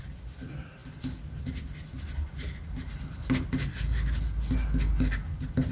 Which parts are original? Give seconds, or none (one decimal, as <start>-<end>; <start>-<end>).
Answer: 0.0-5.7